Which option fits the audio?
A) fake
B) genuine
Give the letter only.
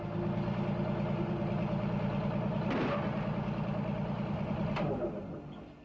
B